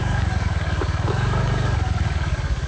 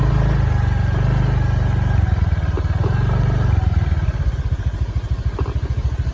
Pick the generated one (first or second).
first